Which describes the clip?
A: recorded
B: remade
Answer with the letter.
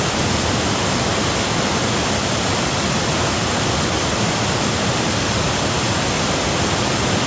A